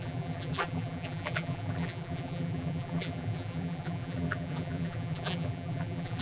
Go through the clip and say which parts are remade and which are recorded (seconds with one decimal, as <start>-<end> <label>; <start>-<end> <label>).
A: 0.0-6.2 remade